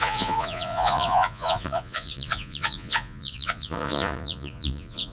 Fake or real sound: fake